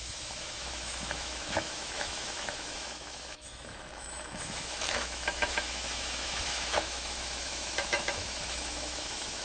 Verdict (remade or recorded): remade